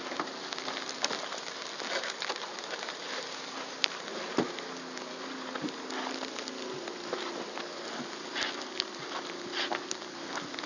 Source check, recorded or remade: recorded